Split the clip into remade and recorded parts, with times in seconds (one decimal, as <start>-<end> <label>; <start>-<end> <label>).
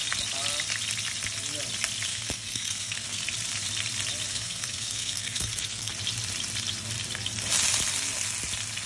0.0-2.1 recorded; 2.1-3.2 remade; 3.2-4.3 recorded; 4.3-5.9 remade; 5.9-8.9 recorded